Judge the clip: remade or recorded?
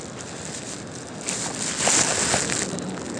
recorded